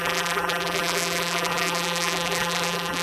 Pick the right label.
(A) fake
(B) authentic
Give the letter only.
A